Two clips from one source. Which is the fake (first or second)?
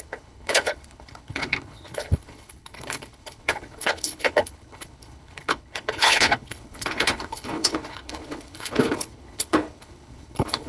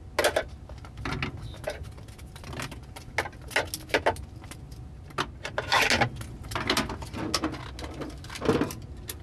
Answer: first